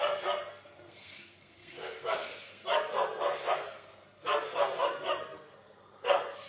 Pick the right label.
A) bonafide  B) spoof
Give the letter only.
B